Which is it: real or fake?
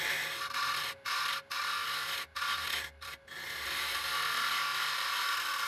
real